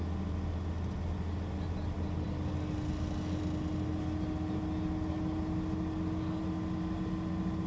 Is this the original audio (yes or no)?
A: yes